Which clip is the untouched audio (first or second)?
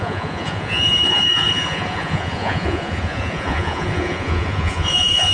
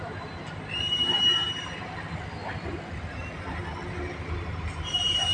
second